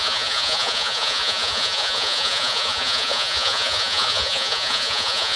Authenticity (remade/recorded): remade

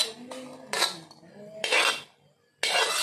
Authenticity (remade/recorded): recorded